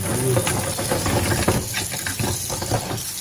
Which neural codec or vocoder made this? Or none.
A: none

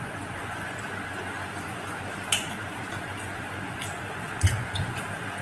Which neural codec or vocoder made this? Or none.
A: vocoder, Vocos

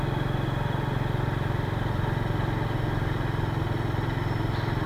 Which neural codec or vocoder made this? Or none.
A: none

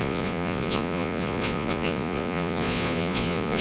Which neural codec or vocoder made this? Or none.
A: vocoder, Vocos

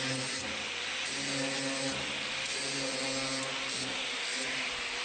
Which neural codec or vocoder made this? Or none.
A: none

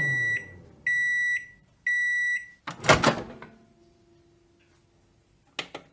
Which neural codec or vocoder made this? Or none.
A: none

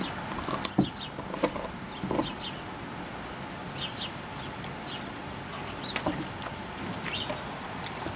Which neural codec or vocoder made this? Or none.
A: none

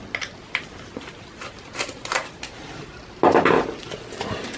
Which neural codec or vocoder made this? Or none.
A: none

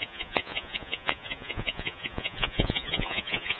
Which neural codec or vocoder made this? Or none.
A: vocoder, Vocos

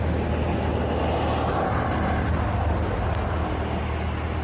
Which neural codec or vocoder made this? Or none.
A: none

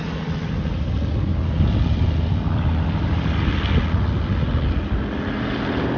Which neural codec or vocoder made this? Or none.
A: none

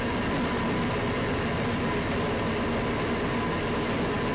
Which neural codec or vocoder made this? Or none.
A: none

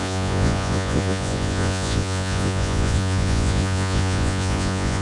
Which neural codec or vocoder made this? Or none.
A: vocoder, Vocos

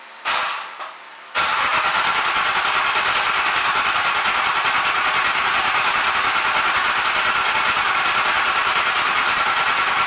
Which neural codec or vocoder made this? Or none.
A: none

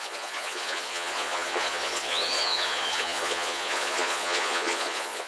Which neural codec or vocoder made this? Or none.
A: vocoder, Vocos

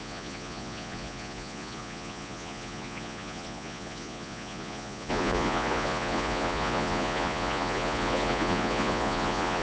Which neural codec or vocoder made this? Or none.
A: vocoder, Vocos